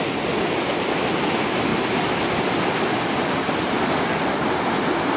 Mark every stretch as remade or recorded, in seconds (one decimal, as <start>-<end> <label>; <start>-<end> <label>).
0.0-5.2 recorded